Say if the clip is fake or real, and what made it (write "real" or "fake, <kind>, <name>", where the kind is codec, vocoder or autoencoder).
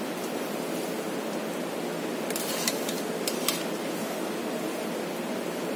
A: real